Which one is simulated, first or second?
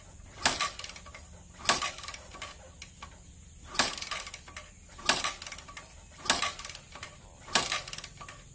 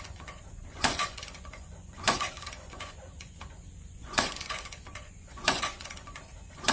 second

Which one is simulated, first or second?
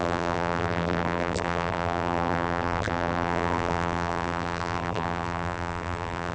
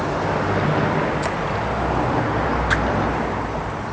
first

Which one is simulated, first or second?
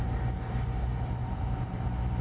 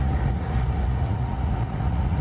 second